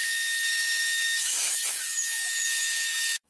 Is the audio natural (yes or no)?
no